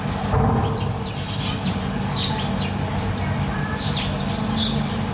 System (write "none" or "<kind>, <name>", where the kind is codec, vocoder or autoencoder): none